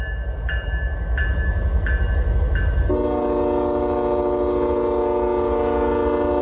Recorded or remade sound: recorded